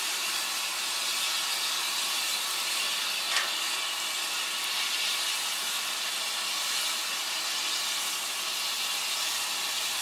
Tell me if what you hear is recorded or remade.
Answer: recorded